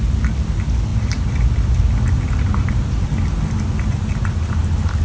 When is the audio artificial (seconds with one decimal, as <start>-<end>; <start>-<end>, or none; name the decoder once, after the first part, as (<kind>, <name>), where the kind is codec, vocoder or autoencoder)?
none